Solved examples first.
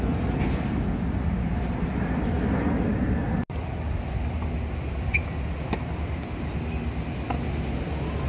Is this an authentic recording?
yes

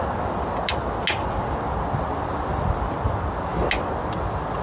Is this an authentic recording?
yes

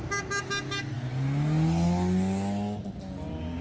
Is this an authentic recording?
yes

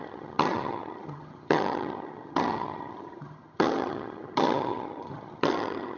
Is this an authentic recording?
no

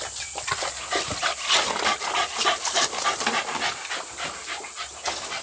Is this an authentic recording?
yes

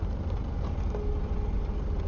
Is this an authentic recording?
yes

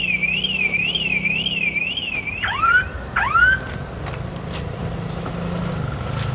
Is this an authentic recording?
yes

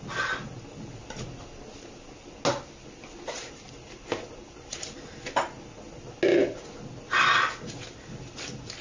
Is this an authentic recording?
yes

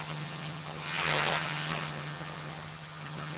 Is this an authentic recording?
no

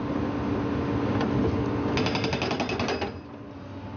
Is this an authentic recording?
yes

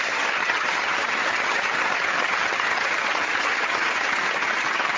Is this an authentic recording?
no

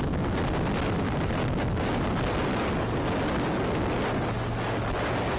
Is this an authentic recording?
yes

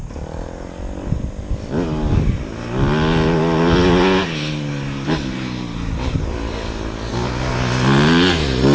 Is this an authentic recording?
yes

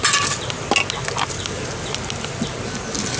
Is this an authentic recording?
yes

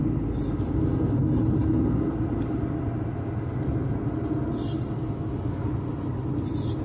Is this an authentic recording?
yes